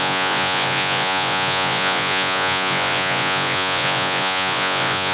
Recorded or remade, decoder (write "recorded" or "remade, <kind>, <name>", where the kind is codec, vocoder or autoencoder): remade, vocoder, Vocos